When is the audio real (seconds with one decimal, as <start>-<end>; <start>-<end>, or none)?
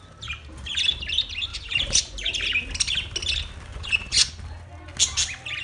0.0-1.5; 2.3-3.7; 4.3-5.6